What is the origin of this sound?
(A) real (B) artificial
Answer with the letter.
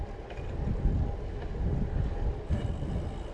B